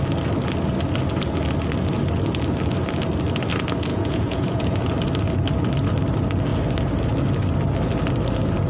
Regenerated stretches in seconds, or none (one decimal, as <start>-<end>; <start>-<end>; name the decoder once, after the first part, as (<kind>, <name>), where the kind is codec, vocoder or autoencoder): 3.9-4.8 (vocoder, Vocos)